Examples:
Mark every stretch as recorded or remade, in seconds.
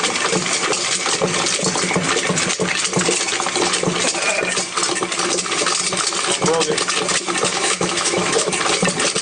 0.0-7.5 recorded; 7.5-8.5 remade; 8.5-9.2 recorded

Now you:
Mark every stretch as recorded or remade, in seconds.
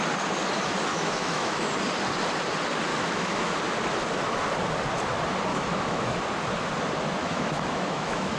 0.0-0.9 recorded; 0.9-1.7 remade; 1.7-2.9 recorded; 2.9-3.6 remade; 3.6-5.5 recorded; 5.5-6.2 remade; 6.2-7.2 recorded; 7.2-8.4 remade